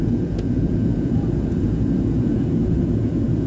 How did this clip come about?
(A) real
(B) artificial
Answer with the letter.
B